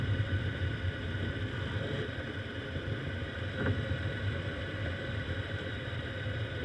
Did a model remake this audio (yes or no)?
yes